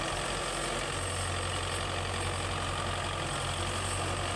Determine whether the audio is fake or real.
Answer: real